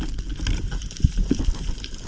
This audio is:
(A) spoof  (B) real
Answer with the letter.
B